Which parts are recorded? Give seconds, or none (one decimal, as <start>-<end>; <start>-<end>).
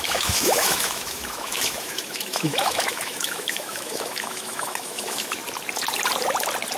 5.4-6.8